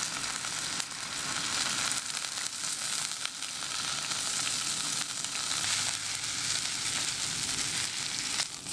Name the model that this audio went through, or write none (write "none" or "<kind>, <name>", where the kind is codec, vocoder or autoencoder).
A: none